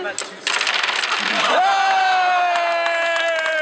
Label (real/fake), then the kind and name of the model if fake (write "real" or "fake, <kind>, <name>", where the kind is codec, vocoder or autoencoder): real